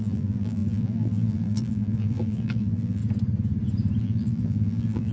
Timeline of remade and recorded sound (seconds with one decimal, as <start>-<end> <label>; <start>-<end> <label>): 0.0-3.0 remade; 3.0-4.0 recorded; 4.0-5.1 remade

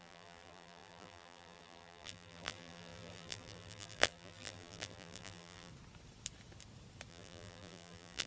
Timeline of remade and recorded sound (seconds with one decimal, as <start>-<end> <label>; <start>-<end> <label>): 0.0-5.7 remade; 5.7-7.1 recorded; 7.1-8.3 remade

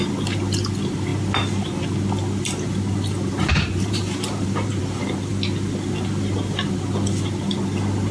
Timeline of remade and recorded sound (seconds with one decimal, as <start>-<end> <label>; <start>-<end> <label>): 0.0-3.5 recorded; 3.5-4.8 remade; 4.8-8.1 recorded